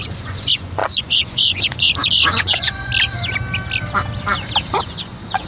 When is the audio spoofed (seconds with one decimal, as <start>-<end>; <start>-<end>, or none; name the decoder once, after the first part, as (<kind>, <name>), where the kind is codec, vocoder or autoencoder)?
0.0-2.9 (vocoder, Vocos); 4.7-5.5